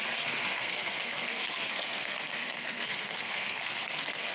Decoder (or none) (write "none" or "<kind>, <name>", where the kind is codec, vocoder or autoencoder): codec, SNAC